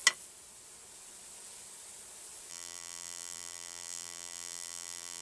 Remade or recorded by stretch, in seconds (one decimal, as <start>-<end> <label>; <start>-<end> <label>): 0.0-2.5 recorded; 2.5-5.2 remade